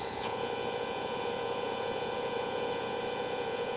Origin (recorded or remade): remade